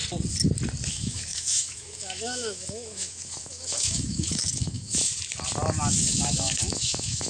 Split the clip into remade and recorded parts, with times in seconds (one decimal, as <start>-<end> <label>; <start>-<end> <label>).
0.0-0.9 recorded; 0.9-5.1 remade; 5.1-5.9 recorded; 5.9-7.3 remade